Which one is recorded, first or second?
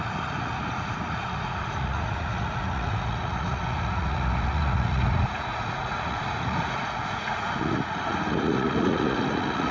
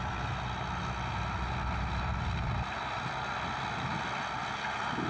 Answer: second